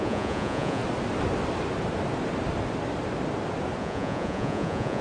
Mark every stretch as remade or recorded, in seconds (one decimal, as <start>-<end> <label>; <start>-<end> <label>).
0.0-0.8 remade; 0.8-3.8 recorded; 3.8-5.0 remade